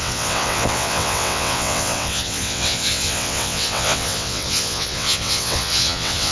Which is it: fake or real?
fake